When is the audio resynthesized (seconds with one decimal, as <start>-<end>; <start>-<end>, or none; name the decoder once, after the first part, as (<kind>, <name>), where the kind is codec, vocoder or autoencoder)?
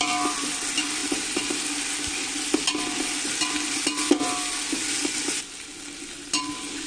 none